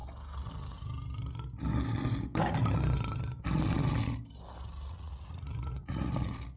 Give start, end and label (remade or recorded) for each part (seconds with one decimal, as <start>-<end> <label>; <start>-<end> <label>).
0.0-4.9 recorded; 4.9-6.1 remade; 6.1-6.6 recorded